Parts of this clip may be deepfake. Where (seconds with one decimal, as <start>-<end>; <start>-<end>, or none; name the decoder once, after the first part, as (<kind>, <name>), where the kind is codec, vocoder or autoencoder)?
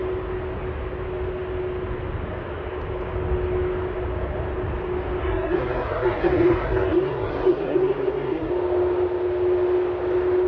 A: 5.2-8.5 (codec, SNAC)